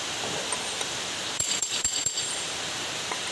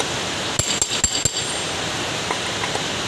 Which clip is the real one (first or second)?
second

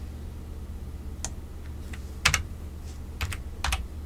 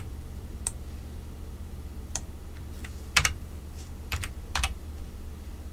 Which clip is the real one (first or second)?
first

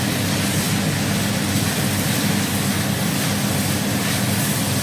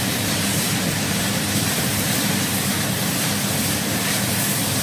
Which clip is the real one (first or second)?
first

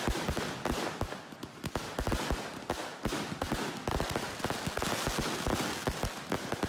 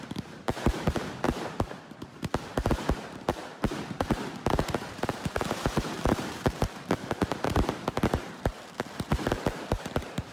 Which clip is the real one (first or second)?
first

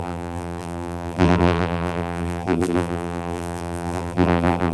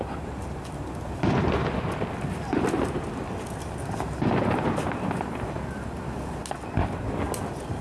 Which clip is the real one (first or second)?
second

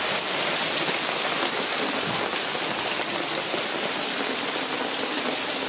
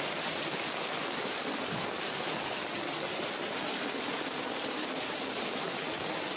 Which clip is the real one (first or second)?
first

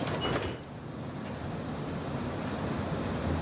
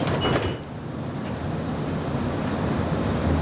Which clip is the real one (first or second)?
second